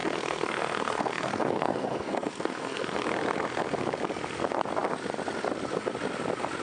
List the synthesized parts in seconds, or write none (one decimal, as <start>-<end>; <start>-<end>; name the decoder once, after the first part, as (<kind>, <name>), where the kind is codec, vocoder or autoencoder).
0.0-3.0 (codec, SNAC)

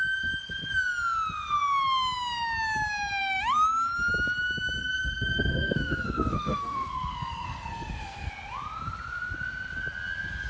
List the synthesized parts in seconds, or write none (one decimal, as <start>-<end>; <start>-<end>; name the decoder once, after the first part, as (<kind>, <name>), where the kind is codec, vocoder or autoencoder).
4.8-8.3 (codec, SNAC)